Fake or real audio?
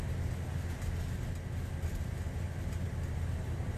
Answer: real